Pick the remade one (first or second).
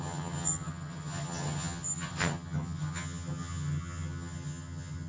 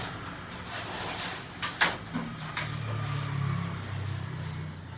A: first